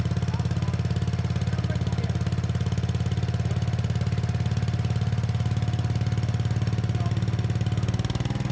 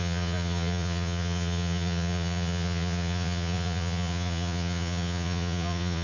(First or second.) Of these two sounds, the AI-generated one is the second